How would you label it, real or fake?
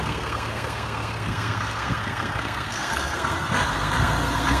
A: fake